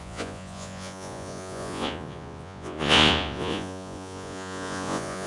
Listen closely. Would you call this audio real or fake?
fake